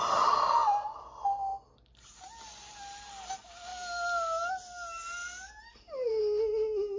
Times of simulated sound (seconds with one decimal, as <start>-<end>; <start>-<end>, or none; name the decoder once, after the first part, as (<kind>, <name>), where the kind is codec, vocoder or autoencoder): 0.6-1.1 (vocoder, BigVGAN v2); 5.2-6.2

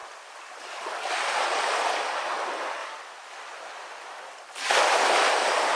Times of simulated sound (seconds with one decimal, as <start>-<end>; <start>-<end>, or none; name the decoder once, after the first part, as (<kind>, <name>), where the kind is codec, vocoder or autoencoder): 0.0-1.7 (vocoder, BigVGAN v2); 2.8-4.8

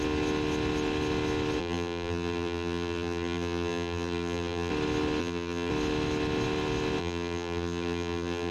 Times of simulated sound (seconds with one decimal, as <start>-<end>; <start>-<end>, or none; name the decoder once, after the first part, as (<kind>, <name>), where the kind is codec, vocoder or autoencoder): 1.6-4.7 (vocoder, BigVGAN v2); 5.2-5.7; 7.0-8.5

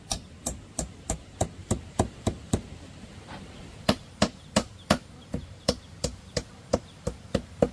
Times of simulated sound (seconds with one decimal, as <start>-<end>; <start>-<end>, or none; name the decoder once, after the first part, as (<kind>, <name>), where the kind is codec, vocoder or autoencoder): 1.6-4.1 (vocoder, BigVGAN v2); 5.4-6.5

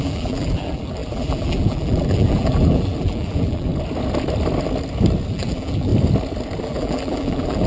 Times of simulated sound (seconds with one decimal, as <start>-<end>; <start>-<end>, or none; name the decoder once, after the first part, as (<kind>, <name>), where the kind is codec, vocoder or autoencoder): 0.0-3.7 (vocoder, BigVGAN v2); 5.3-5.9; 6.6-7.7

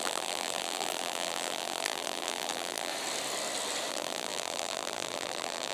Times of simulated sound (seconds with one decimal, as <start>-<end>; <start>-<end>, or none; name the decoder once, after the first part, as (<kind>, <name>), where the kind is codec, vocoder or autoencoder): 0.0-2.9 (vocoder, BigVGAN v2); 3.9-5.7